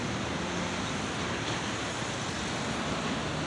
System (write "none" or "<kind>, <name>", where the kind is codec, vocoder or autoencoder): none